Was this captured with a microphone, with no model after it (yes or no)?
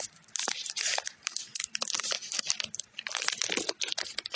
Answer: no